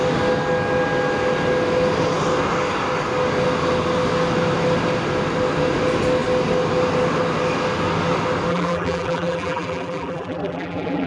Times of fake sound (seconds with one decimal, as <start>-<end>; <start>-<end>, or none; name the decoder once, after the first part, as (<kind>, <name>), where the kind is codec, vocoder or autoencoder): 8.5-11.1 (vocoder, BigVGAN v2)